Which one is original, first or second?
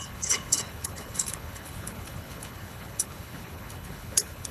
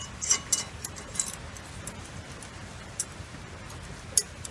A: second